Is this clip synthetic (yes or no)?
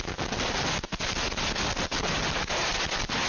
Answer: no